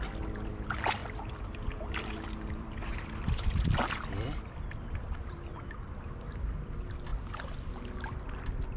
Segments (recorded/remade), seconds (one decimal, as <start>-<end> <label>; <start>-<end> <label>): 0.0-1.0 recorded; 1.0-6.1 remade; 6.1-7.1 recorded; 7.1-7.7 remade; 7.7-8.8 recorded